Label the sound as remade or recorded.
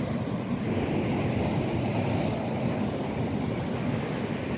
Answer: recorded